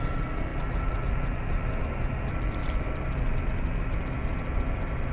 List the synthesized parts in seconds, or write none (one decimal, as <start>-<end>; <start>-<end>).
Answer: none